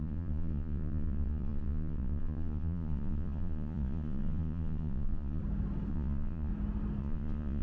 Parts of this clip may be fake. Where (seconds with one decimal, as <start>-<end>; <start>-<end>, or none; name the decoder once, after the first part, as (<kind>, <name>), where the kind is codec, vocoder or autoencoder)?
0.0-5.4 (vocoder, Vocos); 5.9-6.5; 7.0-7.6

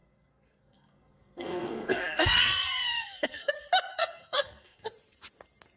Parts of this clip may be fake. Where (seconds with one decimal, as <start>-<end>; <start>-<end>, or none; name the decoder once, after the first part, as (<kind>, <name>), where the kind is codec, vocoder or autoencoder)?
0.0-3.5 (codec, SNAC); 3.9-4.9

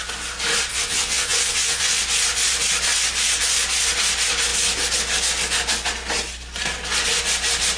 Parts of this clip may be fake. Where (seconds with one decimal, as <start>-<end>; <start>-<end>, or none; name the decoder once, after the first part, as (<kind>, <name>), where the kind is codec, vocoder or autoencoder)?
0.7-2.0 (vocoder, WaveNeXt)

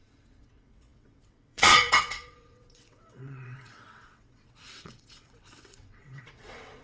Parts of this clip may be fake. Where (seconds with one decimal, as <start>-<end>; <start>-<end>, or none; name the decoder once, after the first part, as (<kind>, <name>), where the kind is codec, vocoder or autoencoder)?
0.0-6.8 (vocoder, WaveNeXt)

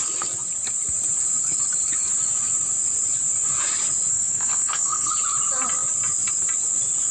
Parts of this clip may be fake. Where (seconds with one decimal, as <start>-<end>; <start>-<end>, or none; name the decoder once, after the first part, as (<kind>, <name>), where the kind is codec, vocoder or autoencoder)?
4.1-5.1 (codec, SNAC)

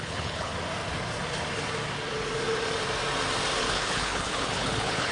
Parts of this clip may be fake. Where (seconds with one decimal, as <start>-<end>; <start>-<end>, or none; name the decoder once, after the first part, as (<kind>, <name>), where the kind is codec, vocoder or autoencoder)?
0.0-0.5 (codec, HILCodec); 3.6-5.1

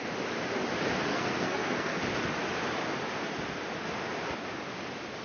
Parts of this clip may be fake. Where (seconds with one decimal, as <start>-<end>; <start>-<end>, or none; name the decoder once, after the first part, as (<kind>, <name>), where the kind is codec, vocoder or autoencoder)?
1.1-2.0 (codec, SNAC)